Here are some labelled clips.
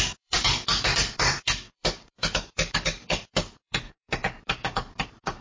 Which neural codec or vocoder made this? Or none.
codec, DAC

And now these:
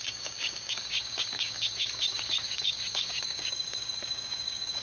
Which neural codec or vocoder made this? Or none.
codec, DAC